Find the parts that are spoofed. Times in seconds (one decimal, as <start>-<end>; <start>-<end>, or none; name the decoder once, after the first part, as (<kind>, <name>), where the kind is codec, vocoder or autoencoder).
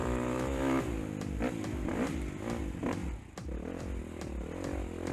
0.0-0.8 (autoencoder, DAC-VAE)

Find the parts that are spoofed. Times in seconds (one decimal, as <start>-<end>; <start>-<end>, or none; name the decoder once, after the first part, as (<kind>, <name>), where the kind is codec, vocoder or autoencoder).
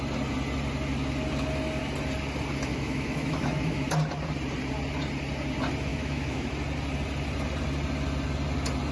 2.7-3.9 (autoencoder, DAC-VAE); 5.9-6.5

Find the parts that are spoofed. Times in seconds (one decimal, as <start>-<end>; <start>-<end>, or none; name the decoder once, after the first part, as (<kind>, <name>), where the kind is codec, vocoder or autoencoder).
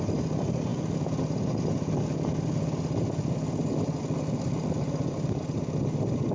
none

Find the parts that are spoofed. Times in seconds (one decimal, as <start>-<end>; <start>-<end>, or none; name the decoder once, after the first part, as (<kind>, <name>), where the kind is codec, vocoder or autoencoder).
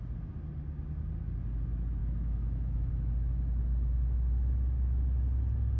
2.0-2.9 (autoencoder, DAC-VAE)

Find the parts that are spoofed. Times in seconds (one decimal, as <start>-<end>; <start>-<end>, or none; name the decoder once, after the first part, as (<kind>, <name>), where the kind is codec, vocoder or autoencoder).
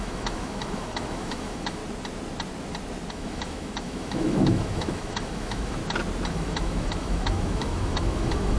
0.0-1.8 (autoencoder, DAC-VAE); 3.1-5.8; 6.3-8.6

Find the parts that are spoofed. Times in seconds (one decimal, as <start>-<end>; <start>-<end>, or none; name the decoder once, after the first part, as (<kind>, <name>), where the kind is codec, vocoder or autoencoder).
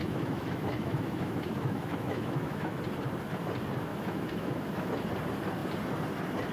0.0-2.8 (autoencoder, DAC-VAE); 3.9-4.9